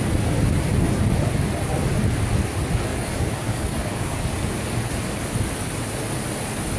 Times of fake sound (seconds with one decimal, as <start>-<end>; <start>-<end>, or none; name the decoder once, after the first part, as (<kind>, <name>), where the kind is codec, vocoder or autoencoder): 2.9-4.6 (codec, DAC)